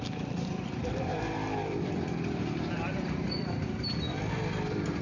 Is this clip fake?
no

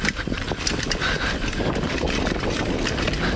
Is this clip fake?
no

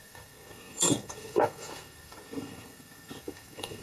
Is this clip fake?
yes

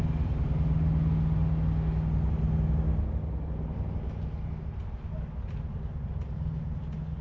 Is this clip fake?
no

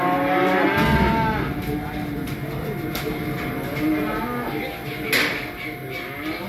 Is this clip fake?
no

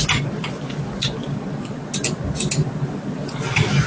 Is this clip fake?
no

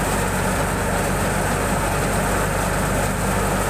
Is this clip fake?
no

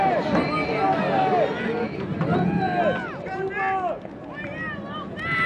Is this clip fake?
no